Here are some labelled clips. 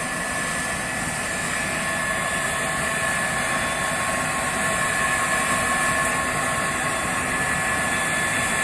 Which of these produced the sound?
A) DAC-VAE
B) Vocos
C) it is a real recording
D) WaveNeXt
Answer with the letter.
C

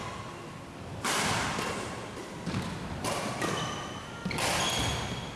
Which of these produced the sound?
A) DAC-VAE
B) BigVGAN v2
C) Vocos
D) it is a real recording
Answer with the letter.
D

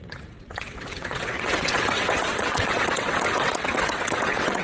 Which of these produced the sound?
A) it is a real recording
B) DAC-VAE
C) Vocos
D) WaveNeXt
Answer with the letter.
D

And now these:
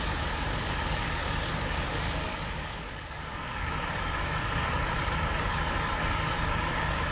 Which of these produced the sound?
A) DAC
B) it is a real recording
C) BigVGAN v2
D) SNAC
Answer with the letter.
A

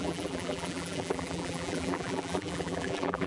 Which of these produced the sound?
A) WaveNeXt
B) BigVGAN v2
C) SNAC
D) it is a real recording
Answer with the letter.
B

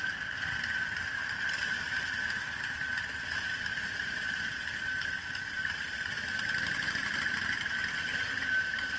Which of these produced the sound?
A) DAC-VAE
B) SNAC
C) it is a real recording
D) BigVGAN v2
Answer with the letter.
C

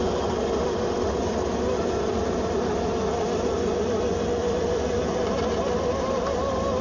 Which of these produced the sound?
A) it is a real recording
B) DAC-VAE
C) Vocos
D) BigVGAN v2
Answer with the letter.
A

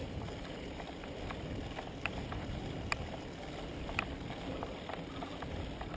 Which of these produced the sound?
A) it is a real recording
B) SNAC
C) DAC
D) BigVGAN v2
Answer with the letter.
A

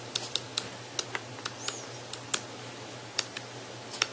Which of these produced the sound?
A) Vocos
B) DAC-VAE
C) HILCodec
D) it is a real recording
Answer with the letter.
D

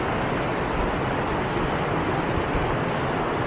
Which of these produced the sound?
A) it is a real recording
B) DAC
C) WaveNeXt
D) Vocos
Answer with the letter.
A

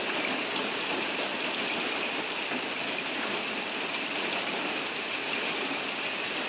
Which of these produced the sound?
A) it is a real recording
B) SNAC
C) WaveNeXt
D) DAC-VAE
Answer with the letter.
A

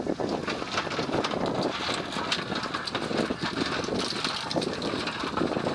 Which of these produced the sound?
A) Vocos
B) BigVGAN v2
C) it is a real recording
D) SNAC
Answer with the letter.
C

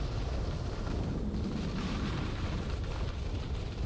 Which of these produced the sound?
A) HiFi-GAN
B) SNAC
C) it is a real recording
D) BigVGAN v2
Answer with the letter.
C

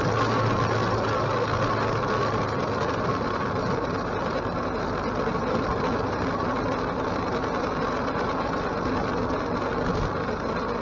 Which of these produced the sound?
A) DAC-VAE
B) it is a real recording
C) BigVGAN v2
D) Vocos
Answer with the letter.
B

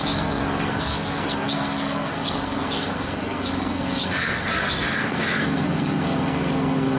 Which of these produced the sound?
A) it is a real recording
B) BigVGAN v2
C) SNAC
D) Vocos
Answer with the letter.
C